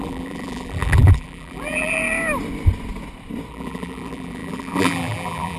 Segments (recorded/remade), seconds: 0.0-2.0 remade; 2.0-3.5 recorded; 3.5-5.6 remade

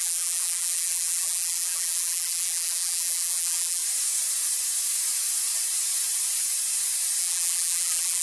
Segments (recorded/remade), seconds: 0.0-3.8 remade; 3.8-7.2 recorded; 7.2-8.2 remade

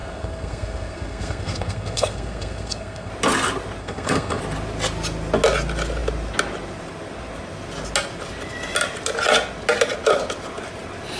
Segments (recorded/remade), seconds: 0.0-3.1 remade; 3.1-3.8 recorded; 3.8-4.4 remade; 4.4-11.2 recorded

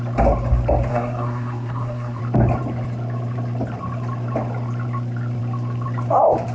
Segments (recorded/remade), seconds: 0.0-0.9 recorded; 0.9-2.2 remade; 2.2-6.5 recorded